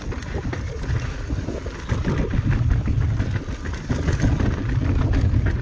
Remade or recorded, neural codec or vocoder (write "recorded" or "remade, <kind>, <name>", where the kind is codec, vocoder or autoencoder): recorded